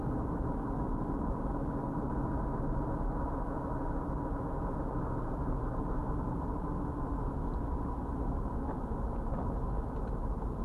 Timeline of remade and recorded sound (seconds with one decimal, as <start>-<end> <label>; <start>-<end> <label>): 0.0-10.6 recorded